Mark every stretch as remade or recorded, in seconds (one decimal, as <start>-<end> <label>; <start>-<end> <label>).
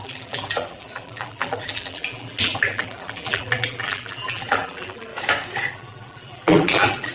0.0-5.1 remade; 5.1-5.7 recorded; 5.7-7.1 remade